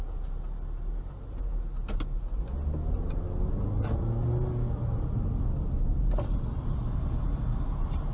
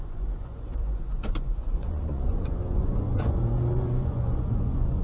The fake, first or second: second